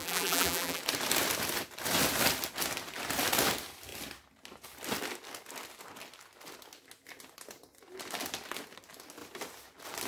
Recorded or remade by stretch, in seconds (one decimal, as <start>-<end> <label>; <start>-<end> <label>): 0.0-0.8 remade; 0.8-10.1 recorded